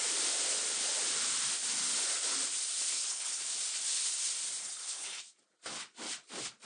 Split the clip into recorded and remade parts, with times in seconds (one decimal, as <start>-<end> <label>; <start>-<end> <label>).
0.0-2.9 recorded; 2.9-3.4 remade; 3.4-4.6 recorded; 4.6-5.2 remade; 5.2-6.7 recorded